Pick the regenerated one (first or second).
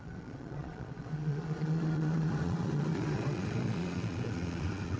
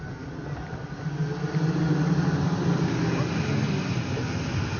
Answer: first